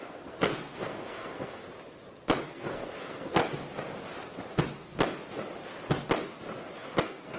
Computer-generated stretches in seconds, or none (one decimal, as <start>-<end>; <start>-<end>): 0.0-1.6; 2.4-3.4; 7.0-7.4